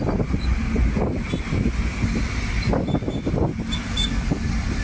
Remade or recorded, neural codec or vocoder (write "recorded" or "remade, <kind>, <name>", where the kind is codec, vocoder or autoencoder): recorded